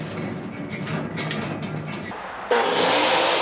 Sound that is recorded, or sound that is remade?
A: recorded